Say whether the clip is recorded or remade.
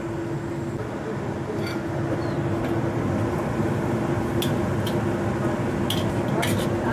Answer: recorded